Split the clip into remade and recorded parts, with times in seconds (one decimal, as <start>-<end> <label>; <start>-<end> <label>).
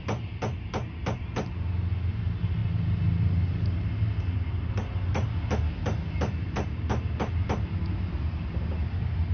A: 0.0-9.3 recorded